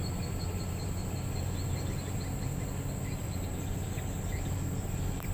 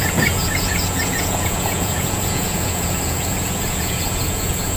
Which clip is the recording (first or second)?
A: first